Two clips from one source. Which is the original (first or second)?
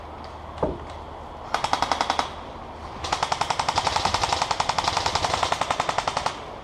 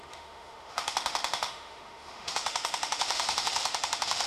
first